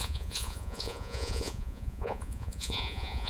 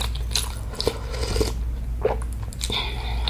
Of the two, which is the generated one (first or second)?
first